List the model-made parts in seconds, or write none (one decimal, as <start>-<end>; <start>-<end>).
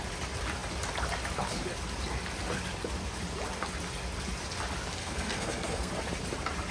5.0-5.9